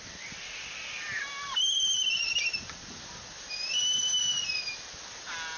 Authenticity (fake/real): real